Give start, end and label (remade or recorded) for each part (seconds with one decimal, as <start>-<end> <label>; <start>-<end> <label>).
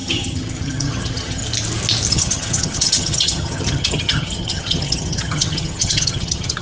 0.0-1.4 remade; 1.4-2.1 recorded; 2.1-6.6 remade